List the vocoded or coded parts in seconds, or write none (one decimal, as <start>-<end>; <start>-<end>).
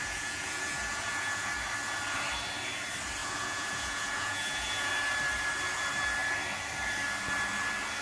0.0-1.5; 3.2-4.9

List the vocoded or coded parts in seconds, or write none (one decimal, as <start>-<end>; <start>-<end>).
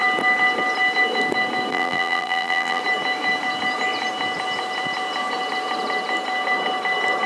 1.7-2.8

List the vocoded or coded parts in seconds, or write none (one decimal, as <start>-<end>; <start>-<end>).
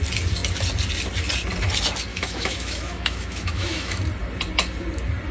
2.1-4.0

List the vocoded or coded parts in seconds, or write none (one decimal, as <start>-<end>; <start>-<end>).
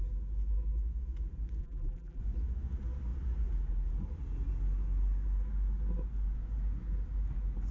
1.6-2.2